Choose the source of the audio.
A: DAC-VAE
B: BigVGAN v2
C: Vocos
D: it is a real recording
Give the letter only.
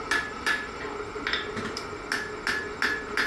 D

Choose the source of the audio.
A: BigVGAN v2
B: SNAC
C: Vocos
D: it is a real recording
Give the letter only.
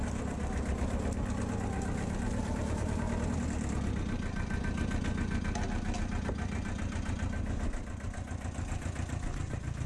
D